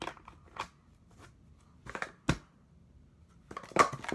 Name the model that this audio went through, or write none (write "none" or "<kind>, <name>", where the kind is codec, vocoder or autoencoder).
none